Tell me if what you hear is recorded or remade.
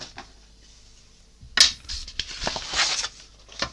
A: recorded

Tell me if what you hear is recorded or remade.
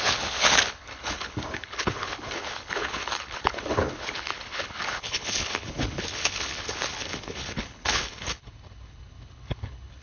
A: remade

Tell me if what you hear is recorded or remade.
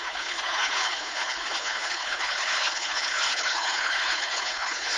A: remade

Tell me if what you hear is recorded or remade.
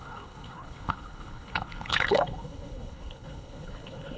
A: remade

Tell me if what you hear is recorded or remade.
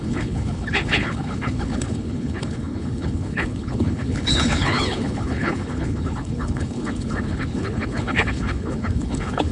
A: remade